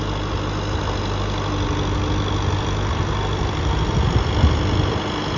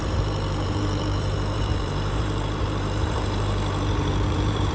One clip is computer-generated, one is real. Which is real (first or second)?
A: first